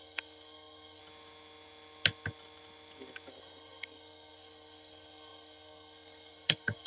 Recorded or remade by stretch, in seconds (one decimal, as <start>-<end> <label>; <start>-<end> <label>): 0.0-1.0 remade; 1.0-3.3 recorded; 3.3-6.9 remade